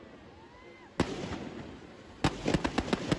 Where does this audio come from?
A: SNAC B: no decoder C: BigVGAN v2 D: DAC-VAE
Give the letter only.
B